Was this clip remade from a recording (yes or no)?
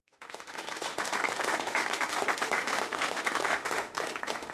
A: yes